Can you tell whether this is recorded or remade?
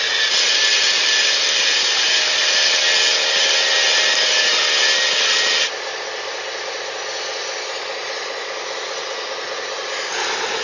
recorded